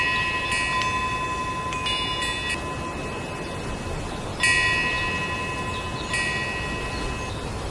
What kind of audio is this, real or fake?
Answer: real